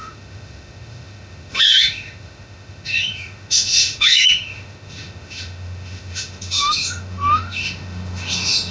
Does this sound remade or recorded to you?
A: remade